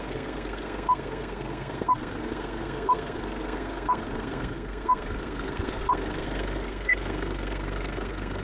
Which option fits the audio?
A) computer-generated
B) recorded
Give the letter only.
A